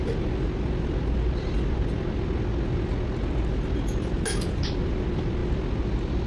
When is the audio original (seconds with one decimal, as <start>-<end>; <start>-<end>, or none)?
0.0-6.3